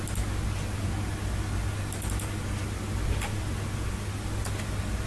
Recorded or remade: recorded